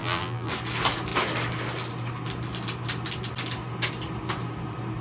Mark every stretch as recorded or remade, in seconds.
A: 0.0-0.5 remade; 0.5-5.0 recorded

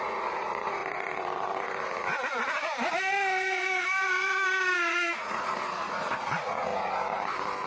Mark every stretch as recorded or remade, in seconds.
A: 0.0-0.8 remade; 0.8-5.1 recorded; 5.1-6.7 remade; 6.7-7.7 recorded